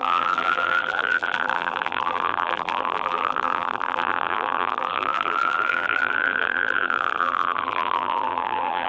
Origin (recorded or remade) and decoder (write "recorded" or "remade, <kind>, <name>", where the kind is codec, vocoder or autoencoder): remade, vocoder, BigVGAN v2